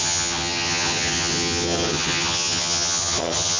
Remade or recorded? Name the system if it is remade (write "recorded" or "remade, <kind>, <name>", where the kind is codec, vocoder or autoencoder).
remade, vocoder, HiFi-GAN